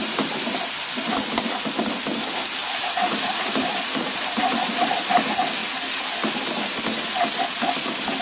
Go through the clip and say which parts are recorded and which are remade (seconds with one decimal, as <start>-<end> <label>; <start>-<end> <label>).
0.0-2.6 recorded; 2.6-4.9 remade; 4.9-8.2 recorded